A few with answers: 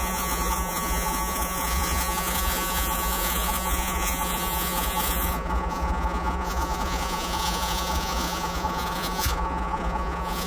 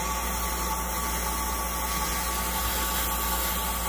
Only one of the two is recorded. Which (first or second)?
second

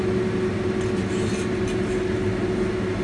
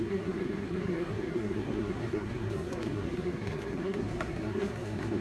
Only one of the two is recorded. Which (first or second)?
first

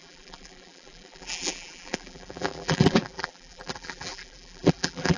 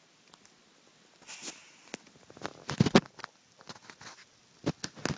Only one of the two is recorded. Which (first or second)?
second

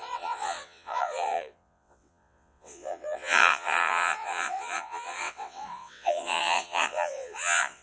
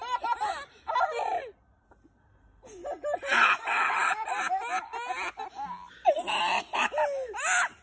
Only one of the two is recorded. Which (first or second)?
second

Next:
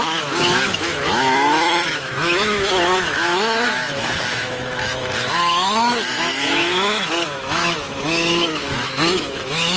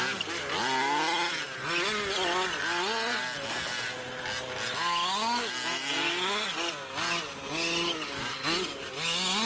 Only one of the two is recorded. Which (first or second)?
second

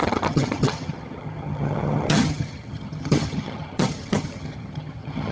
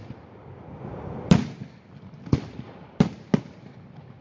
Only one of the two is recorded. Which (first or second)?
second